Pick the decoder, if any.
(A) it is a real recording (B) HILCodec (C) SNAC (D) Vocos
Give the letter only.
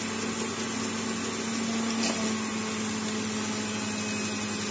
A